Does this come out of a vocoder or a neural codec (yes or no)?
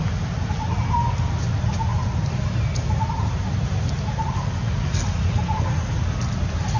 no